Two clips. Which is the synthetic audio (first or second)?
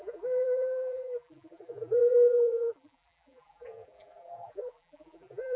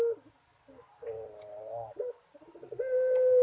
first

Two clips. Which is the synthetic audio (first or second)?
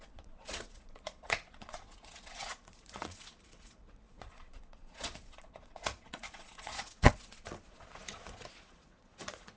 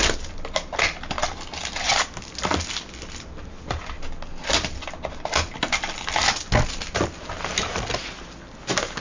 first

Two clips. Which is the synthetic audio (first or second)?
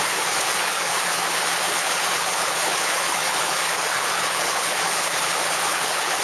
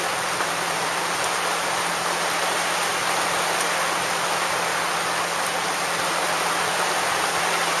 first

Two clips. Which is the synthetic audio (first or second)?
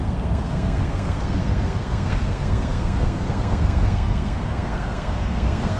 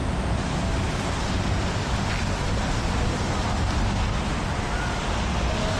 first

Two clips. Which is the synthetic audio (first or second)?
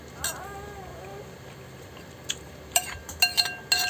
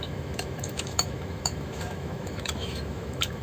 second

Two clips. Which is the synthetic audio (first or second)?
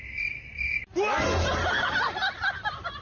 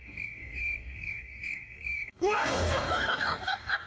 second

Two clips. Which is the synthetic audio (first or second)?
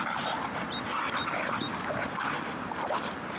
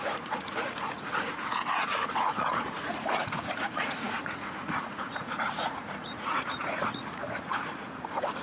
second